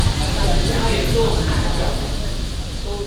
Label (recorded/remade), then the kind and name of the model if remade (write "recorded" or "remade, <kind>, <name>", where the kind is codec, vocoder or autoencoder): recorded